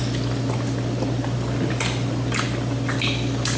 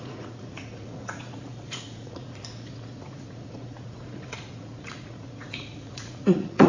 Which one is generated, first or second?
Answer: second